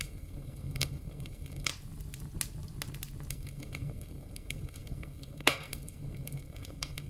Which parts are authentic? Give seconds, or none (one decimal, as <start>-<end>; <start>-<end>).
1.7-3.3